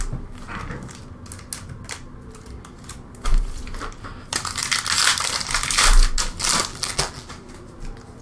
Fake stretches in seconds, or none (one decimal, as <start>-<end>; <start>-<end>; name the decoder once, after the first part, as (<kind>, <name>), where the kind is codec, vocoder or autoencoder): 6.7-7.3 (vocoder, BigVGAN v2)